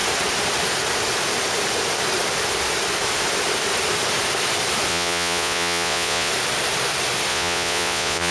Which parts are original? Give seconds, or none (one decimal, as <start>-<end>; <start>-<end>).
0.0-4.9; 6.3-7.3